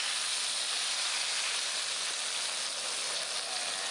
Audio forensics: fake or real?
real